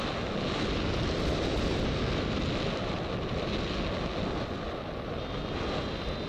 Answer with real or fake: real